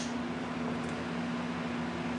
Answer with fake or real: real